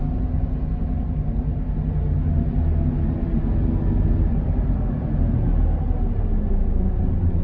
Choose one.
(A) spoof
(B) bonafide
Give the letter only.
B